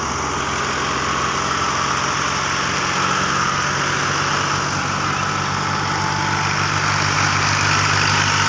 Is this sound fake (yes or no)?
no